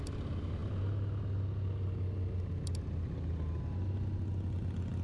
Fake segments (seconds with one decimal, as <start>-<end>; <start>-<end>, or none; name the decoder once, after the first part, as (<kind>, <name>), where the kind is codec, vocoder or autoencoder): none